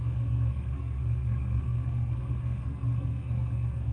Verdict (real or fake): fake